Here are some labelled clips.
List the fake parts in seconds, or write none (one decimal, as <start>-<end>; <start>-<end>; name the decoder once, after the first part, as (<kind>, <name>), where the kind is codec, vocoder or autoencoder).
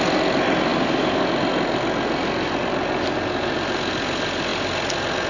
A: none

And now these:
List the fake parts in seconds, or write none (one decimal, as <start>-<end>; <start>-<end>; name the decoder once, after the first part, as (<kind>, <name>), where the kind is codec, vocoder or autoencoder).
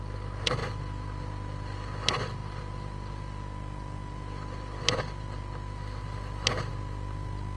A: none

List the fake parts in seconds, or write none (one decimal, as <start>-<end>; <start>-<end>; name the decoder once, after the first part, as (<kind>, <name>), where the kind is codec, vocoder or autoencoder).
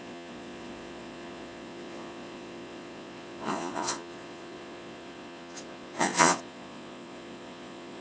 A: 0.0-8.0 (vocoder, Vocos)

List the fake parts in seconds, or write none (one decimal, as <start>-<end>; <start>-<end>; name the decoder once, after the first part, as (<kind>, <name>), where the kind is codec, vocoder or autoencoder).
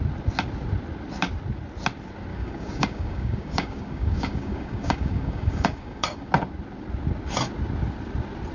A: 2.3-6.3 (codec, DAC)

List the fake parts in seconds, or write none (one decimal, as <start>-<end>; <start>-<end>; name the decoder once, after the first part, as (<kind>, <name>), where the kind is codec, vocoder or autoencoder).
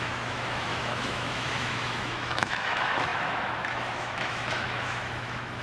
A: 0.0-5.6 (autoencoder, DAC-VAE)